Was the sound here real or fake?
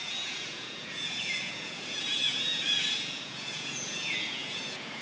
fake